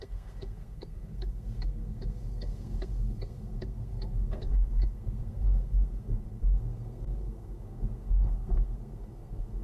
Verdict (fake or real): fake